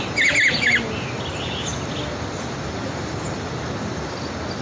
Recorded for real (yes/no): yes